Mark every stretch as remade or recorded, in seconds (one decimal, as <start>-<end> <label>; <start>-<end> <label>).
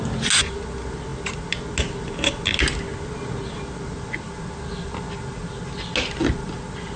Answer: 0.0-7.0 recorded